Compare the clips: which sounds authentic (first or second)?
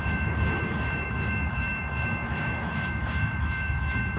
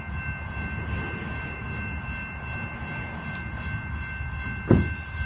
second